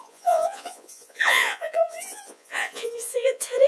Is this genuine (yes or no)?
no